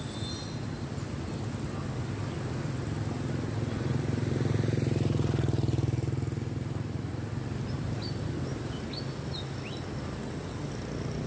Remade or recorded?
recorded